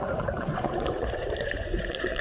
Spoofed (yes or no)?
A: yes